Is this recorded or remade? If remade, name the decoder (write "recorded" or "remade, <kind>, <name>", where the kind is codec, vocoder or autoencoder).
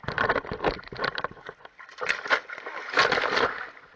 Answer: recorded